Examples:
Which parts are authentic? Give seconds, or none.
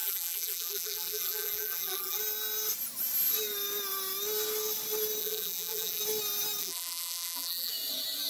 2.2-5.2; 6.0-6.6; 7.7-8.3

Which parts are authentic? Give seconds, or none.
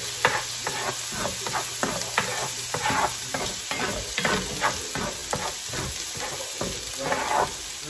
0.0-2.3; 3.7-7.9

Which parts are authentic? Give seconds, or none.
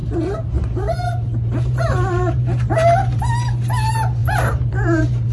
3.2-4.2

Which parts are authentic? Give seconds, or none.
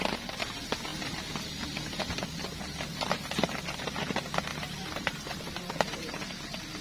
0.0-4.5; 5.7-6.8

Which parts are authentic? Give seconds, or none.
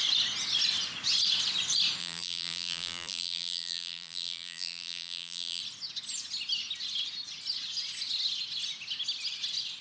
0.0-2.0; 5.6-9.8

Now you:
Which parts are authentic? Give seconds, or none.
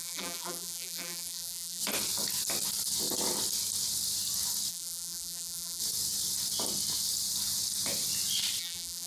1.8-4.7; 5.8-8.6